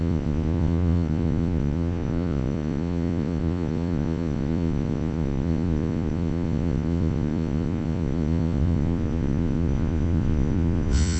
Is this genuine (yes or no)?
no